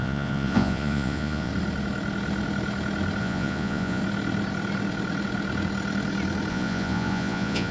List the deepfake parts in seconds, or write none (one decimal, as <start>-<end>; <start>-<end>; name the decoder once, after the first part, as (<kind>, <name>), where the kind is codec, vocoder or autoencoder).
0.0-1.5 (vocoder, Vocos); 3.2-4.0; 6.5-7.7